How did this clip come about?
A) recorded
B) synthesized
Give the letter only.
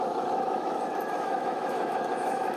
B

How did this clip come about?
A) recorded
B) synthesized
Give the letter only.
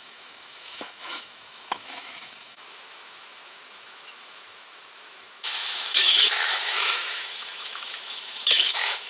B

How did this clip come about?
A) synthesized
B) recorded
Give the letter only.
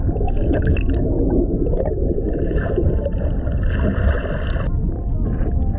B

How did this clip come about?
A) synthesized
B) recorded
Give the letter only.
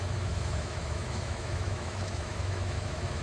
A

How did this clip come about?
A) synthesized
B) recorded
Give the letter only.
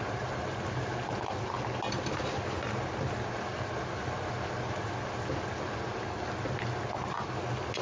B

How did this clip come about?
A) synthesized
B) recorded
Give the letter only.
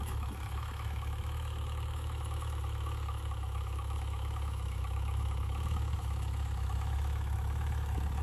A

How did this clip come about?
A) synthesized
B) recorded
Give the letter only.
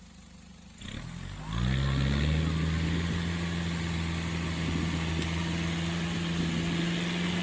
B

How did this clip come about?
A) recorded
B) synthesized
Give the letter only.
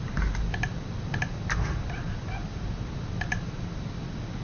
A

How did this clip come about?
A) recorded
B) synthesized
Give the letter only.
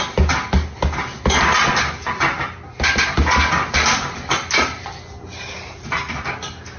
A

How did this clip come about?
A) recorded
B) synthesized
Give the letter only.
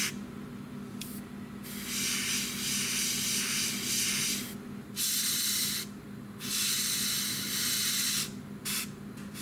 A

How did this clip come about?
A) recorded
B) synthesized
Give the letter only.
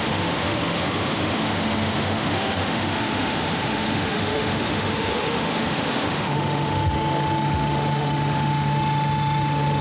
B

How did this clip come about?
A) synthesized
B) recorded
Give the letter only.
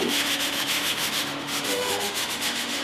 A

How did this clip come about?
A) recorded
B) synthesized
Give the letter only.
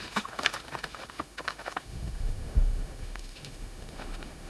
B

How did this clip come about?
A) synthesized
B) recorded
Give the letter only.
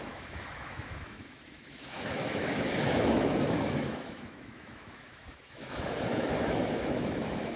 A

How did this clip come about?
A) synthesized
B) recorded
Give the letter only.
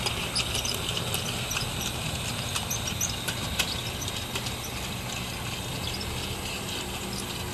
B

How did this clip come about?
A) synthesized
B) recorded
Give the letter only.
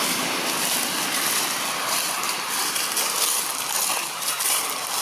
B